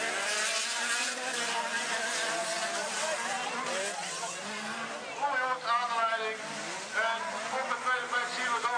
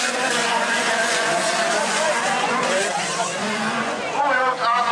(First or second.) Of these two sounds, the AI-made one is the second